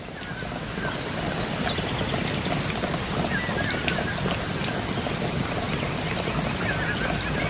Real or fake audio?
real